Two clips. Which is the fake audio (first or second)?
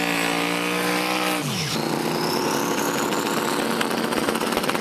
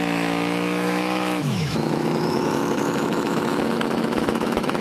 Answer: second